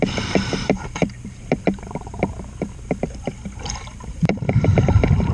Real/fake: fake